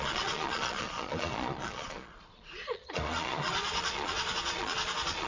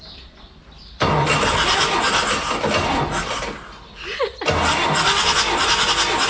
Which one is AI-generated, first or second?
first